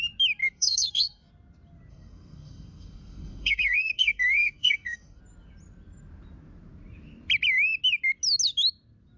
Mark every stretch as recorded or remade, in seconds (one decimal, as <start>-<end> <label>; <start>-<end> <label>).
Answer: 0.0-0.4 recorded; 0.4-1.3 remade; 1.3-1.9 recorded; 1.9-5.2 remade; 5.2-9.2 recorded